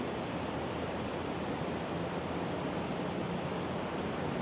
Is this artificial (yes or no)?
no